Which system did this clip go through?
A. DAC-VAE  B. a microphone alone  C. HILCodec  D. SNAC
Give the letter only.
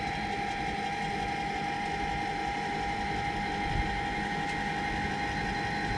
B